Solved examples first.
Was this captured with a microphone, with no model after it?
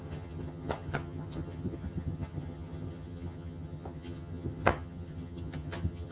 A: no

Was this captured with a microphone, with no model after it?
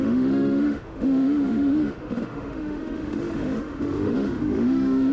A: no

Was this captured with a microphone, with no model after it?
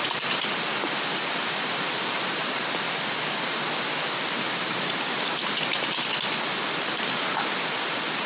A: no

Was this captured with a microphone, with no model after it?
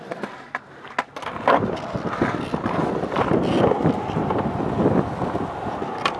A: yes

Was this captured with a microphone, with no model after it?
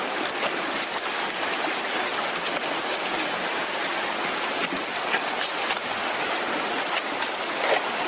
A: yes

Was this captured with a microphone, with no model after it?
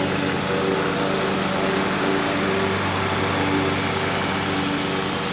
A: yes